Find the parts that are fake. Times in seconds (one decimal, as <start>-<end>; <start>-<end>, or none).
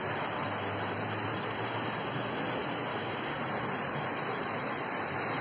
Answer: 2.9-3.4